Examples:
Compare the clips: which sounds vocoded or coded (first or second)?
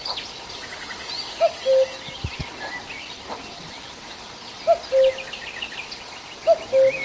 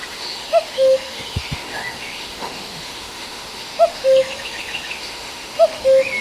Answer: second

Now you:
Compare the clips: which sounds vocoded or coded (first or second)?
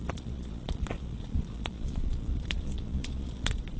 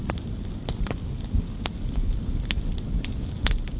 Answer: first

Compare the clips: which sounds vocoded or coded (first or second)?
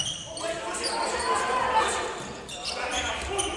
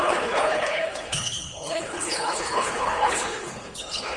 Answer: second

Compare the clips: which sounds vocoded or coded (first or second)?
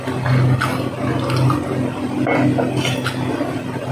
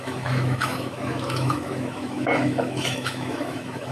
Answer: second